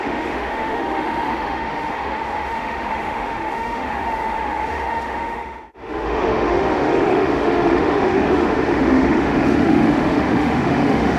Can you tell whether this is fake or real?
fake